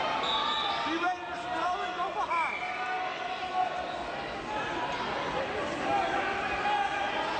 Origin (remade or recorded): recorded